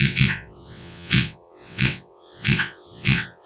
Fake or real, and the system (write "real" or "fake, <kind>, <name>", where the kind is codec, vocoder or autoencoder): fake, vocoder, WaveNeXt